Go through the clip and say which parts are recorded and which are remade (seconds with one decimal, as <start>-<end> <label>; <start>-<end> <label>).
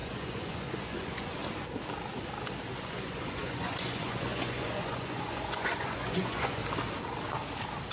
0.0-1.4 remade; 1.4-2.8 recorded; 2.8-6.6 remade; 6.6-7.9 recorded